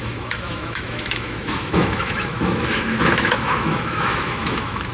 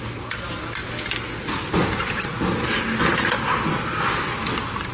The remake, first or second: first